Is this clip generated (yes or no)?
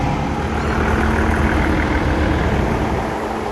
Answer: no